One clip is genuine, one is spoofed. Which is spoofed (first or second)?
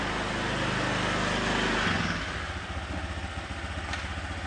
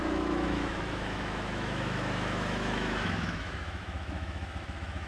second